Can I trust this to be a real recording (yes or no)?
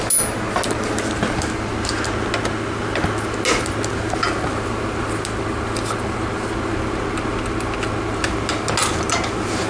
yes